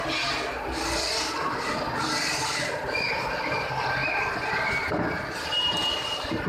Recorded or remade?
recorded